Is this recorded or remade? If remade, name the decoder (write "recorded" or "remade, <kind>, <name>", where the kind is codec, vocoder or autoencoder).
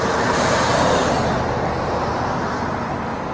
recorded